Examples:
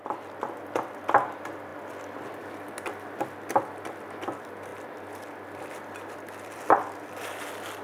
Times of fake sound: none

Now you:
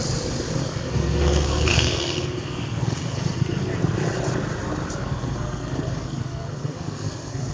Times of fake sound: 0.6-3.7; 5.0-7.5

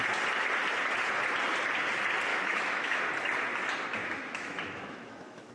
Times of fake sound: 2.3-3.0; 4.0-5.5

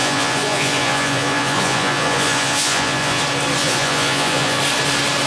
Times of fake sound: 0.0-3.2; 3.6-4.6

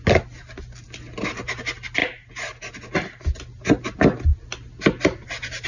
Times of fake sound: none

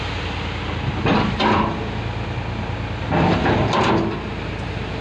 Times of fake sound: none

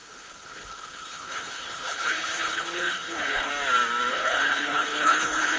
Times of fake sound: 0.0-3.5; 4.1-5.6

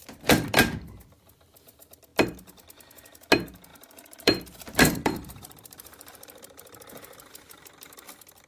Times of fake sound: 3.7-8.1